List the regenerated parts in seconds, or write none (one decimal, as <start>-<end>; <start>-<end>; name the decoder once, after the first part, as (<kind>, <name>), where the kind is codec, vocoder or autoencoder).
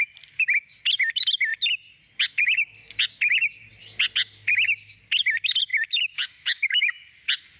5.7-7.1 (autoencoder, DAC-VAE)